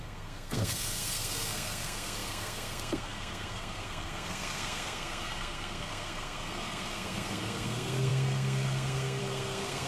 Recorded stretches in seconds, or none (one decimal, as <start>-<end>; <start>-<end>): none